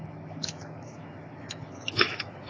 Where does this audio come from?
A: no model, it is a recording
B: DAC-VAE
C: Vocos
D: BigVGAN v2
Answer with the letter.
B